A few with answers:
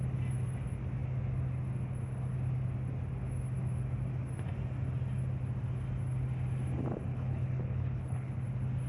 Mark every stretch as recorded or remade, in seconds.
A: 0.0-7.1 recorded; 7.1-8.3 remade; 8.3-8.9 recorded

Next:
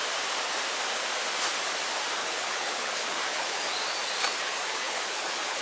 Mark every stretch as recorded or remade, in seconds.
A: 0.0-2.2 recorded; 2.2-3.6 remade; 3.6-4.4 recorded; 4.4-5.6 remade

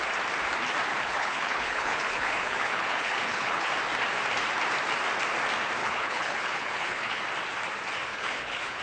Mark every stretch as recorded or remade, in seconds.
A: 0.0-0.9 recorded; 0.9-3.7 remade; 3.7-5.8 recorded; 5.8-7.2 remade; 7.2-8.1 recorded; 8.1-8.8 remade

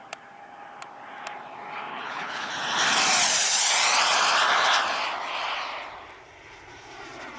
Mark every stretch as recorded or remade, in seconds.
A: 0.0-1.9 recorded; 1.9-2.5 remade; 2.5-7.4 recorded

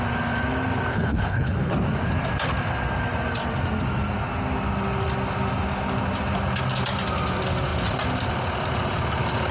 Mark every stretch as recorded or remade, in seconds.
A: 0.0-0.9 recorded; 0.9-1.7 remade; 1.7-9.5 recorded

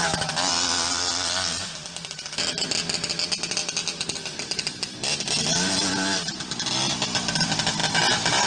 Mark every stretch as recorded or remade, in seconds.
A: 0.0-8.5 recorded

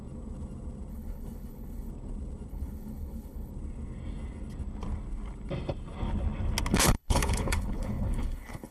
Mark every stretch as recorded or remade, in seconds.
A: 0.0-0.9 recorded; 0.9-1.9 remade; 1.9-2.5 recorded; 2.5-3.5 remade; 3.5-6.7 recorded; 6.7-8.7 remade